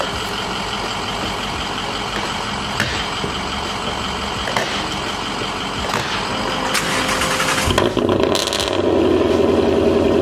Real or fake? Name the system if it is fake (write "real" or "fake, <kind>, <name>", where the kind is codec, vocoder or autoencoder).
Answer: real